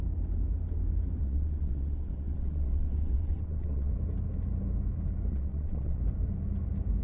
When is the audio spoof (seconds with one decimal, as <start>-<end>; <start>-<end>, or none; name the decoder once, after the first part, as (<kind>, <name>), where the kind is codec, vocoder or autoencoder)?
1.2-3.9 (vocoder, WaveNeXt); 5.3-6.0